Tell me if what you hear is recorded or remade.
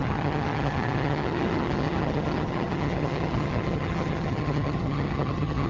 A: remade